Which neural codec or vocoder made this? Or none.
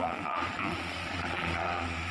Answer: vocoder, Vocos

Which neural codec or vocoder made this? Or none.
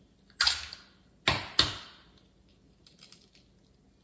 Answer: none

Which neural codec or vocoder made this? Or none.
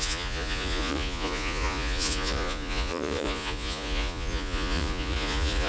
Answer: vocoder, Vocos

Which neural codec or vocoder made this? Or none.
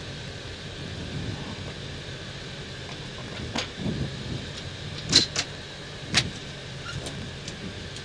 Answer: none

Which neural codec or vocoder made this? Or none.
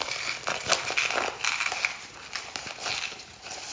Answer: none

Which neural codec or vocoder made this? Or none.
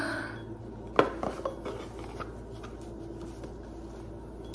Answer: none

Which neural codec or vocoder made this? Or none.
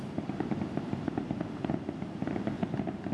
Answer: none